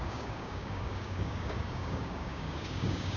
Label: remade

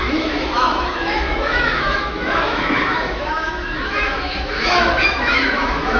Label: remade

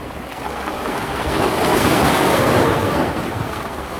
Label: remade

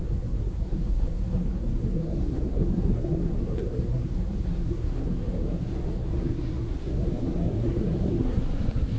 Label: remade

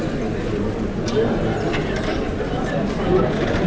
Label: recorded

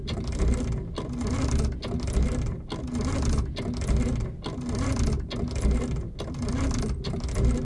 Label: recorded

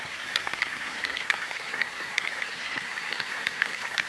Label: remade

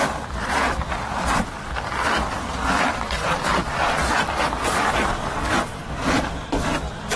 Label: recorded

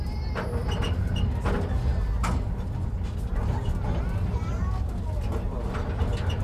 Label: recorded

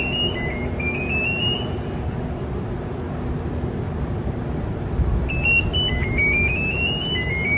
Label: recorded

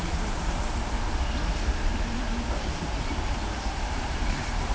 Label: remade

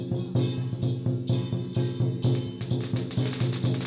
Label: recorded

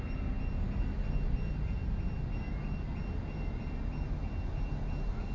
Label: recorded